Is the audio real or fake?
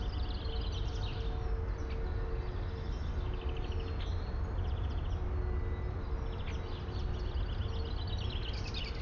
real